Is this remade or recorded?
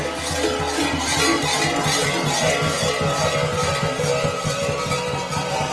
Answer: recorded